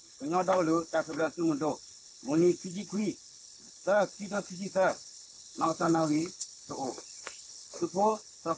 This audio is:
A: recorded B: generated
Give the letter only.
B